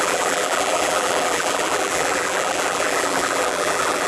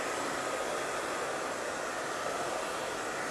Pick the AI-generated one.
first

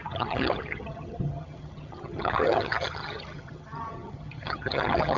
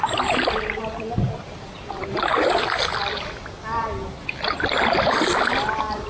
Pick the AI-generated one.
first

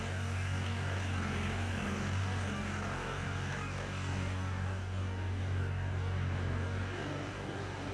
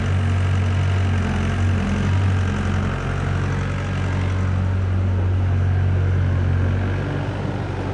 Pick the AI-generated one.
first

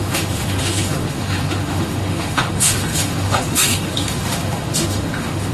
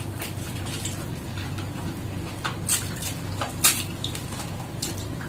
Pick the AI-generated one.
first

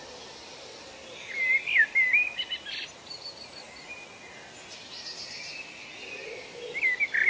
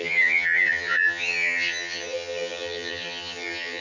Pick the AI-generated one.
second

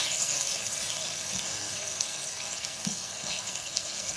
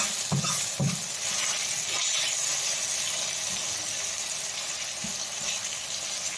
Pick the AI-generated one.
first